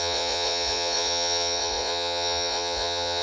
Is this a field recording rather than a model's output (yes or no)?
no